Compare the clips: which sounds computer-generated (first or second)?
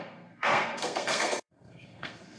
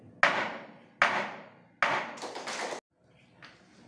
first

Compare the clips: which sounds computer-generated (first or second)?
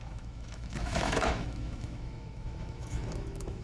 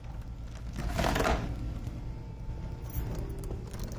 first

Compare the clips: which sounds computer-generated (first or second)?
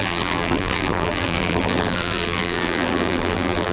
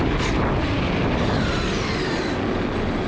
first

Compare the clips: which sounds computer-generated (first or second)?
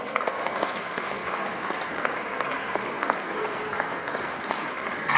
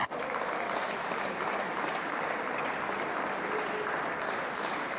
first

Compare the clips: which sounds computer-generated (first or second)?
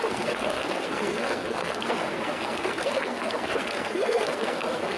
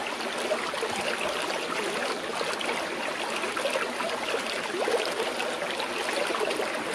first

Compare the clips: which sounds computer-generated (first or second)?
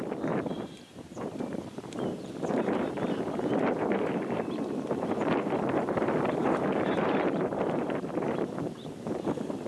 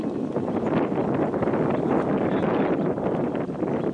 first